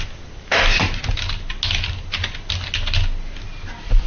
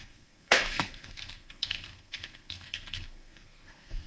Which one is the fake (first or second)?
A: second